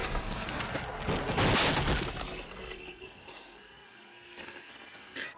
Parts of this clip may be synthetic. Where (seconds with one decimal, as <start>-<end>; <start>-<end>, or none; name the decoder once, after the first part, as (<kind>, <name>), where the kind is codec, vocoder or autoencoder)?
0.0-0.6 (codec, SNAC); 2.2-5.4